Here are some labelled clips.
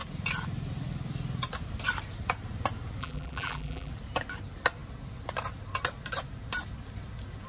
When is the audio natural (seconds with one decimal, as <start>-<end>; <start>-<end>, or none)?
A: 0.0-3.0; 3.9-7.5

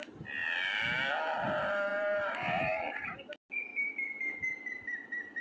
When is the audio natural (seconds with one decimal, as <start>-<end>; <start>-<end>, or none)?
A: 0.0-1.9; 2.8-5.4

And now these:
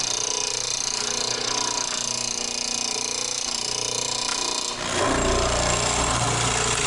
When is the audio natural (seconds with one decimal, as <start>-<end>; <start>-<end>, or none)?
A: 0.0-6.9

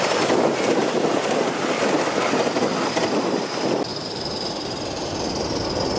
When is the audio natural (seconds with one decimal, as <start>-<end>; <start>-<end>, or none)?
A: 0.0-0.8; 1.6-3.9; 5.1-6.0